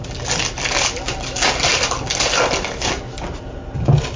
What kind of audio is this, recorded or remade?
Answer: recorded